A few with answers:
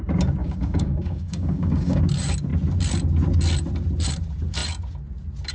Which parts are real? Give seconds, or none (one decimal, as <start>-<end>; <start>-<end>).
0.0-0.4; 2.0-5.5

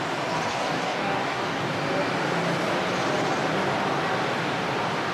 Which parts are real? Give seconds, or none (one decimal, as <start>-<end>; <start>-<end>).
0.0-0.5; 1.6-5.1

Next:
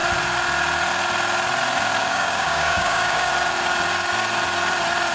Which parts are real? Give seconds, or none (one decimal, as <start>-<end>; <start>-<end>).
0.0-2.0; 3.3-5.1